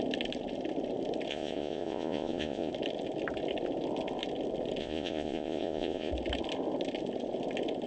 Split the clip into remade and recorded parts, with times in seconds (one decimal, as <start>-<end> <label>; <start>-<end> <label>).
0.0-1.3 recorded; 1.3-2.7 remade; 2.7-4.8 recorded; 4.8-6.1 remade; 6.1-7.9 recorded